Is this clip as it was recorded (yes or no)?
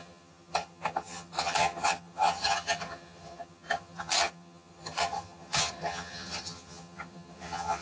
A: no